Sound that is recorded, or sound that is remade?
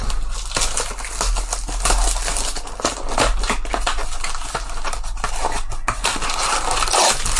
recorded